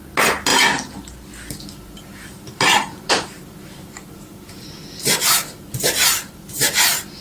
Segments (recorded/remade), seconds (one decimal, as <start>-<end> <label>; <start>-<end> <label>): 0.0-2.1 recorded; 2.1-6.4 remade; 6.4-7.2 recorded